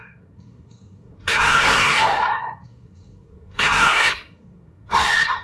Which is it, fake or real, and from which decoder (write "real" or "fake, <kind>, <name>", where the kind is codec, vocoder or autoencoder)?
fake, codec, SNAC